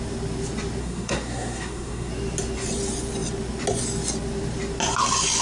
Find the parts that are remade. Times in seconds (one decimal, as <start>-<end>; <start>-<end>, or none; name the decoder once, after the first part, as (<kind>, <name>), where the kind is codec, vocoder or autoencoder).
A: 0.8-2.1 (codec, SNAC)